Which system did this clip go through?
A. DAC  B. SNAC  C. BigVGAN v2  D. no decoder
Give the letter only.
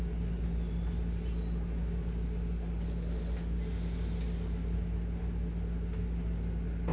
D